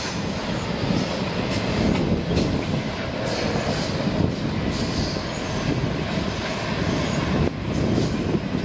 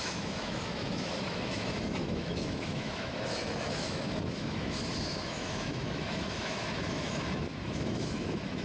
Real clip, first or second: first